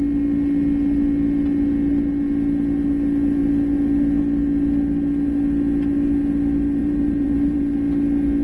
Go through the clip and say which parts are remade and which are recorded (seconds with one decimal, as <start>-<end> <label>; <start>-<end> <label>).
0.0-6.8 recorded; 6.8-7.6 remade; 7.6-8.4 recorded